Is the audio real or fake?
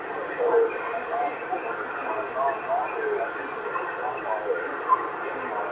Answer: real